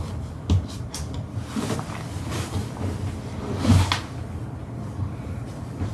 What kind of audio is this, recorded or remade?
recorded